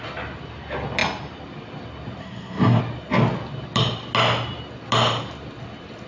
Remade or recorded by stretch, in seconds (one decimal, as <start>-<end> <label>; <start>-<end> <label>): 0.0-2.2 recorded; 2.2-2.8 remade; 2.8-6.1 recorded